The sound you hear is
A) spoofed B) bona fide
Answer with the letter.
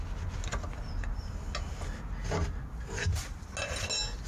B